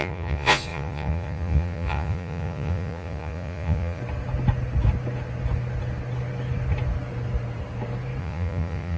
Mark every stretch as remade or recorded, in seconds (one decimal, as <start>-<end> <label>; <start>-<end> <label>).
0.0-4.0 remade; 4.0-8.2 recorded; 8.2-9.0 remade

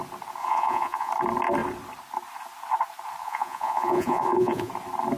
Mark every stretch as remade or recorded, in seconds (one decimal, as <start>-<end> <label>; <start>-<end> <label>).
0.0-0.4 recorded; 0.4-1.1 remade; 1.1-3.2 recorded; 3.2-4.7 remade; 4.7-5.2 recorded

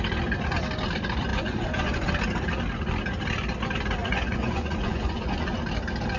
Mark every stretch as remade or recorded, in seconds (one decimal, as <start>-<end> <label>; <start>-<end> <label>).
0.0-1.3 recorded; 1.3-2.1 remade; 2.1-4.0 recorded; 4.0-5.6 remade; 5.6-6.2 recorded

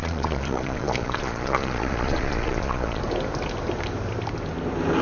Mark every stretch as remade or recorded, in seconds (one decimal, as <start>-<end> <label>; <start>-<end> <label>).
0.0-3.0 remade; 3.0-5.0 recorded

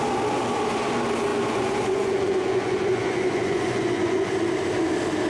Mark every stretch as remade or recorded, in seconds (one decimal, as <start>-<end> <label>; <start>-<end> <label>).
0.0-1.3 recorded; 1.3-4.3 remade; 4.3-5.3 recorded

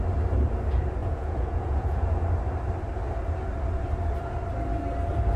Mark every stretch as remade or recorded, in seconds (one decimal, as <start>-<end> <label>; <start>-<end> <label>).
0.0-1.0 recorded; 1.0-2.0 remade; 2.0-5.4 recorded